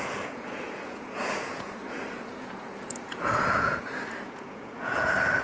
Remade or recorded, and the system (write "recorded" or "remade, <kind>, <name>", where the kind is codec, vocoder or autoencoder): remade, vocoder, Vocos